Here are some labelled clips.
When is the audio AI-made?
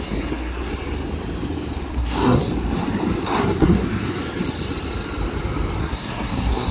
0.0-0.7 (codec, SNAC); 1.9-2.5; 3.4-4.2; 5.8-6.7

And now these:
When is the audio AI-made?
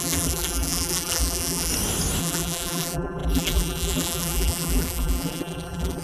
0.0-1.7 (vocoder, BigVGAN v2); 2.2-6.0